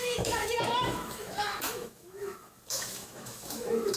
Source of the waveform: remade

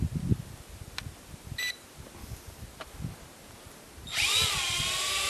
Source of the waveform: recorded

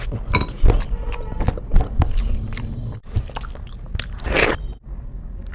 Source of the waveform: recorded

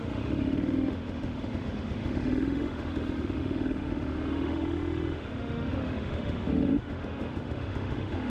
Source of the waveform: remade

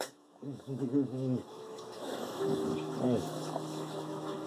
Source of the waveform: remade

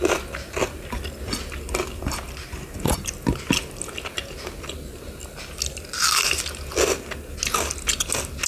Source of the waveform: recorded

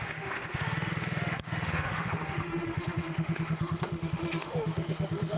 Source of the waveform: remade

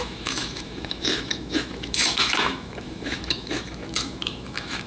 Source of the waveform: remade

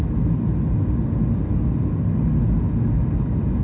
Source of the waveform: recorded